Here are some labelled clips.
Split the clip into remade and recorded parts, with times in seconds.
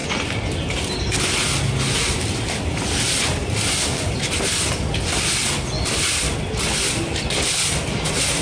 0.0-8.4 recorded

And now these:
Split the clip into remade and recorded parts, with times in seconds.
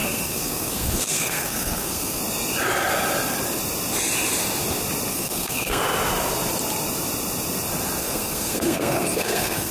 0.0-2.2 remade; 2.2-5.1 recorded; 5.1-5.8 remade; 5.8-8.0 recorded; 8.0-9.7 remade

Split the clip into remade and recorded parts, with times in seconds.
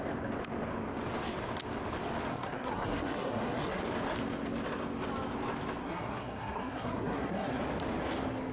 0.0-2.3 recorded; 2.3-3.8 remade; 3.8-5.8 recorded; 5.8-7.6 remade; 7.6-8.5 recorded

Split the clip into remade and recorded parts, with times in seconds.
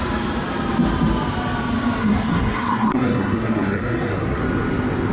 0.0-2.0 recorded; 2.0-4.4 remade; 4.4-5.1 recorded